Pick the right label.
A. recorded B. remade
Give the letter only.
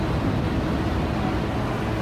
A